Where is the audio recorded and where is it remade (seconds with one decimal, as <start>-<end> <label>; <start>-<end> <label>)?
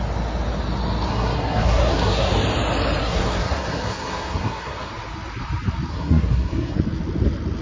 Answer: 0.0-1.1 recorded; 1.1-2.3 remade; 2.3-3.0 recorded; 3.0-4.9 remade; 4.9-5.9 recorded; 5.9-6.8 remade; 6.8-7.6 recorded